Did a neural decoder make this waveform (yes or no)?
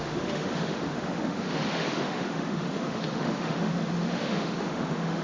yes